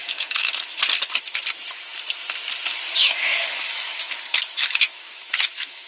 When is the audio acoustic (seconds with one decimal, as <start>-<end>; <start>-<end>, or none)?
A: 0.8-3.0